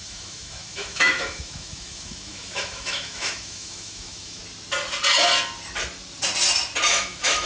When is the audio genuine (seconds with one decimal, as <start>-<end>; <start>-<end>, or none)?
4.4-6.9